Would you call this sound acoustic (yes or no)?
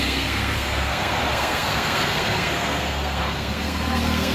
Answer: no